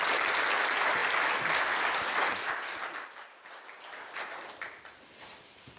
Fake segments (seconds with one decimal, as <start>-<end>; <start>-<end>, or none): none